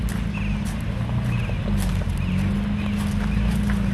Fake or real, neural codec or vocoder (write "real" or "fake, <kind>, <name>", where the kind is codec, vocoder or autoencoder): real